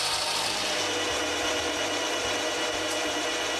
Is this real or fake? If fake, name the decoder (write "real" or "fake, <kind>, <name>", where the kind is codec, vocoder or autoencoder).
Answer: real